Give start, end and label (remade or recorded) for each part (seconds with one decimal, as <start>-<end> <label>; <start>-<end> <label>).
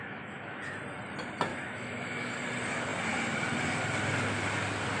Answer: 0.0-0.6 remade; 0.6-1.5 recorded; 1.5-2.3 remade; 2.3-5.0 recorded